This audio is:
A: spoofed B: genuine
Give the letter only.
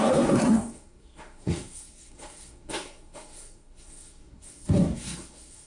A